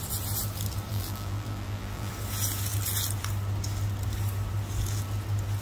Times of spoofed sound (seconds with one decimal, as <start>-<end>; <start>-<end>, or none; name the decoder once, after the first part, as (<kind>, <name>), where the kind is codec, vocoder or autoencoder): 0.9-2.1 (vocoder, BigVGAN v2)